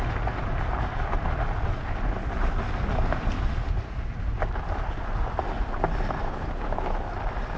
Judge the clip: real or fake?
real